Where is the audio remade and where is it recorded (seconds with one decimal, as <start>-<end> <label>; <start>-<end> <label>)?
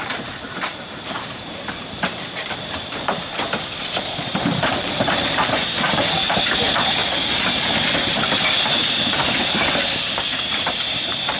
0.0-3.3 remade; 3.3-4.0 recorded; 4.0-7.0 remade; 7.0-8.8 recorded; 8.8-11.4 remade